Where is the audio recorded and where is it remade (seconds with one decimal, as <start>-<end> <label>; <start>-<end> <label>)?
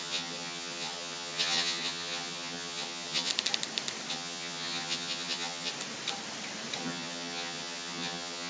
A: 0.0-3.3 remade; 3.3-4.1 recorded; 4.1-5.7 remade; 5.7-6.8 recorded; 6.8-8.5 remade